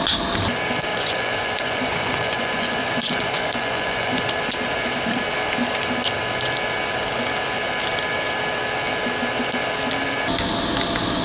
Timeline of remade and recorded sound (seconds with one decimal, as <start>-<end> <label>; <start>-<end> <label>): 0.0-0.9 recorded; 0.9-4.3 remade; 4.3-11.2 recorded